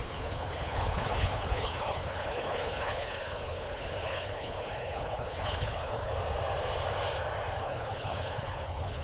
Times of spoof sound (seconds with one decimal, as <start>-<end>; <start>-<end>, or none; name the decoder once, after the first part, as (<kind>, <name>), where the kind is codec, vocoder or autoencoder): 0.0-6.1 (codec, HILCodec); 7.6-9.0